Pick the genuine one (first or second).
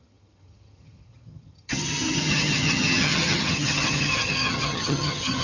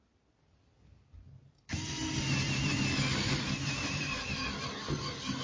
second